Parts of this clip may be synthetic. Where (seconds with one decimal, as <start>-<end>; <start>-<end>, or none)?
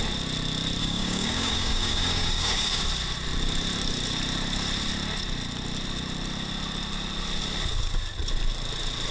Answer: 0.8-2.8